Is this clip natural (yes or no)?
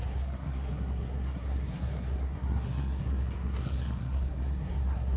no